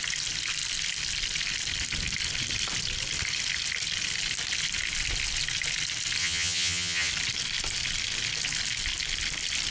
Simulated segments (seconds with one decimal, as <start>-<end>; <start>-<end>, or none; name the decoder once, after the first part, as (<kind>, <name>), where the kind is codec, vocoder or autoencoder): 6.2-7.1 (vocoder, HiFi-GAN)

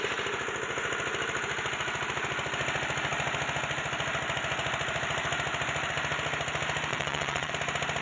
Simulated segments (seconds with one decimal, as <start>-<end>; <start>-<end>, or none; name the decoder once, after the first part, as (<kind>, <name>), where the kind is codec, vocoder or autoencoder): 6.9-7.5 (vocoder, WaveNeXt)

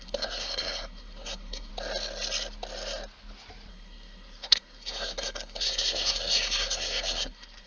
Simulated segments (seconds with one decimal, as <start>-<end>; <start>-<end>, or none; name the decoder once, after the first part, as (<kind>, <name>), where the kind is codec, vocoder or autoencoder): 0.0-1.7 (codec, SNAC); 3.7-7.7

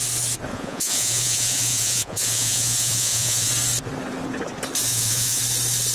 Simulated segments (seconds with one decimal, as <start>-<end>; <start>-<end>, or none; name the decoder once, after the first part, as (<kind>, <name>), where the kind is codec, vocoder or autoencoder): 0.5-3.5 (vocoder, Vocos); 4.9-5.4

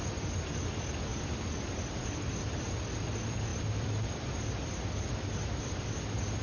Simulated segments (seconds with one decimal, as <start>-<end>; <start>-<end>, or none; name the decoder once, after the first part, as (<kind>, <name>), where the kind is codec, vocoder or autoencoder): 1.1-1.7 (vocoder, BigVGAN v2); 3.5-5.8

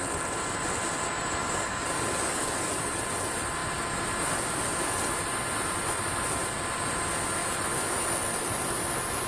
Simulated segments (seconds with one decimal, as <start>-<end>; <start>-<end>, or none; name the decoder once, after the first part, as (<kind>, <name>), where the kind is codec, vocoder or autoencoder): 1.4-2.9 (codec, DAC)